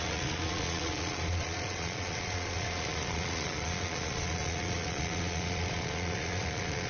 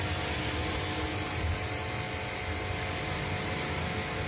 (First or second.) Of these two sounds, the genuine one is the second